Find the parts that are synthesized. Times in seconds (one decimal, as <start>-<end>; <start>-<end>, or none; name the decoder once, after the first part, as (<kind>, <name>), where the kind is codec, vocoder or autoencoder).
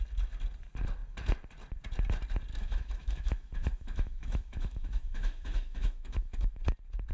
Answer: 2.5-6.6 (autoencoder, DAC-VAE)